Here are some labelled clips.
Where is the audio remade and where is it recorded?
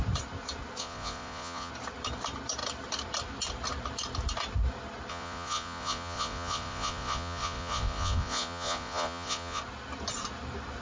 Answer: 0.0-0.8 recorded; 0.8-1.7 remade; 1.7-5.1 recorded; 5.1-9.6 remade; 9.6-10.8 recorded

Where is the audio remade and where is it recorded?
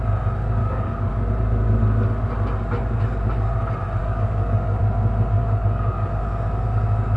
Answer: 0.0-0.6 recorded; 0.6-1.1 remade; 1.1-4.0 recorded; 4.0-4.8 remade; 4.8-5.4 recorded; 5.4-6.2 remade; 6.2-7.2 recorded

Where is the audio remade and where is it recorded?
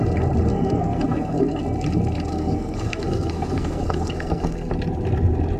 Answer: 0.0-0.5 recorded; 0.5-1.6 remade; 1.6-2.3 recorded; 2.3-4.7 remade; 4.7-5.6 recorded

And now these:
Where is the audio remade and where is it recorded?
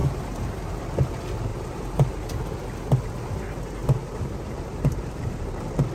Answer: 0.0-0.8 remade; 0.8-1.5 recorded; 1.5-2.3 remade; 2.3-3.8 recorded; 3.8-5.5 remade; 5.5-5.9 recorded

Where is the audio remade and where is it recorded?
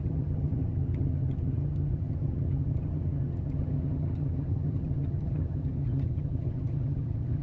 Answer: 0.0-7.4 remade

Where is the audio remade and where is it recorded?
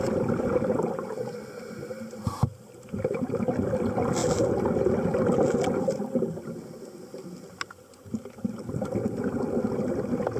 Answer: 0.0-10.4 recorded